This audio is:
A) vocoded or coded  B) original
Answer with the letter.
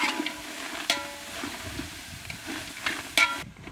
B